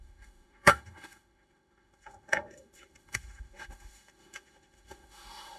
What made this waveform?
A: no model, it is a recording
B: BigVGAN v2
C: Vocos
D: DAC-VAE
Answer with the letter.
D